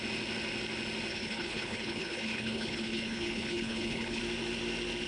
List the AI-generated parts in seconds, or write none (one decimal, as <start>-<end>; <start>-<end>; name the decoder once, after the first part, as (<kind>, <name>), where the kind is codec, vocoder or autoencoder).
1.1-4.2 (codec, HILCodec)

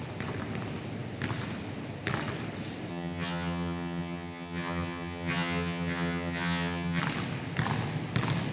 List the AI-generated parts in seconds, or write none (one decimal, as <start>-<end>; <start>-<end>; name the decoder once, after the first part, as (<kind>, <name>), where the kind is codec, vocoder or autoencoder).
2.9-7.0 (vocoder, HiFi-GAN)

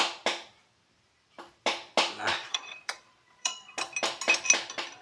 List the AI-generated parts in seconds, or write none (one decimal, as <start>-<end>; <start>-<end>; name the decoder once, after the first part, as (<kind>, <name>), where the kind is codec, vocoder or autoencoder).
2.4-3.7 (vocoder, Vocos)

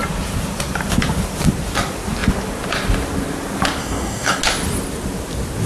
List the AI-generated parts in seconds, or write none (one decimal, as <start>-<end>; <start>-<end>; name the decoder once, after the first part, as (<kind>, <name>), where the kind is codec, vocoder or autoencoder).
3.8-4.4 (codec, DAC)

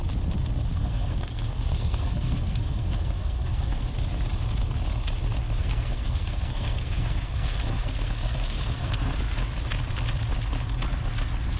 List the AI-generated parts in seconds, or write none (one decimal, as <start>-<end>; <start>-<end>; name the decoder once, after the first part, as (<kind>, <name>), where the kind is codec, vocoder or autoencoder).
0.7-3.9 (codec, SNAC); 5.6-9.1

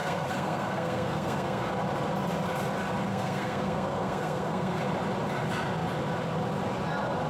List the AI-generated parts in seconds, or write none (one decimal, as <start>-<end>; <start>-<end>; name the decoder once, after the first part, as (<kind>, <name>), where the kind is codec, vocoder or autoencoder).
0.0-1.7 (codec, SNAC); 3.1-4.8